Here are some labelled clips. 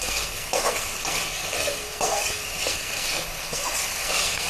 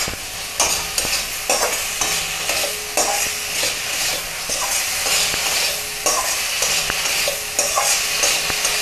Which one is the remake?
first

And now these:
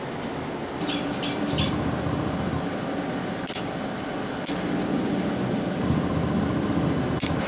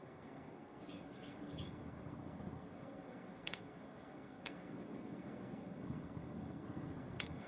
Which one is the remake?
second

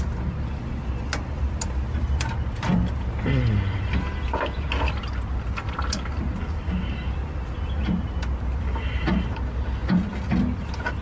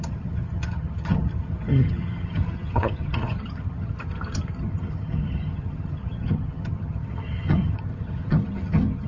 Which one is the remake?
second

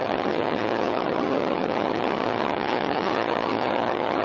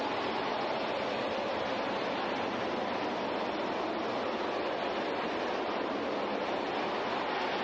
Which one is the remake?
first